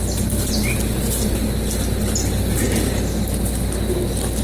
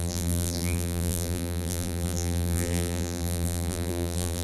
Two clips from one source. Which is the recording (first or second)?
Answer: first